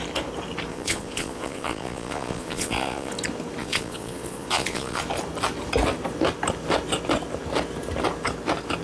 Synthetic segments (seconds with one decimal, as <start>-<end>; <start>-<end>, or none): 0.7-3.1; 3.6-5.0